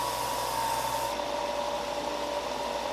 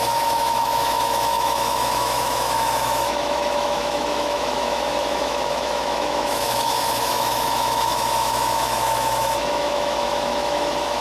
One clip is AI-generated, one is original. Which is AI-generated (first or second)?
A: second